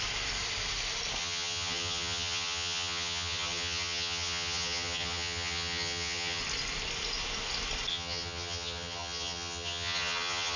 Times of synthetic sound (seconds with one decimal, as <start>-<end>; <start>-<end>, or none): 1.2-6.4; 7.9-10.6